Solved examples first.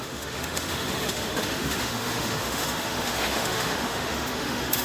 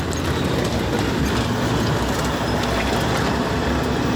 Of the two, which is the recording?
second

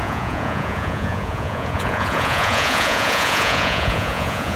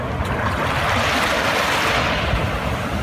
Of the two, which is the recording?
second